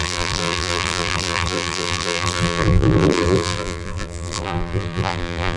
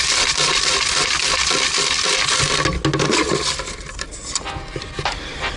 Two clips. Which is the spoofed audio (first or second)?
first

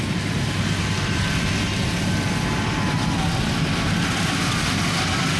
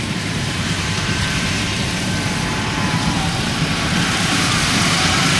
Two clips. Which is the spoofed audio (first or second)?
second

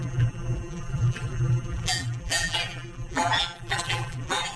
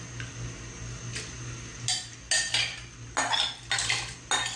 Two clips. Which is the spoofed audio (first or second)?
first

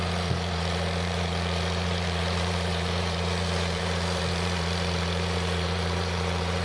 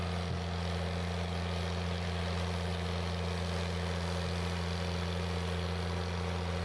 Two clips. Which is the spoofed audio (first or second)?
first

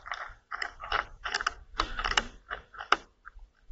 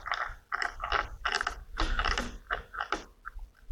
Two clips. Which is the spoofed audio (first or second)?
first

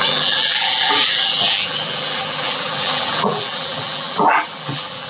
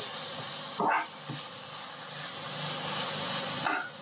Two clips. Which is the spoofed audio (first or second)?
first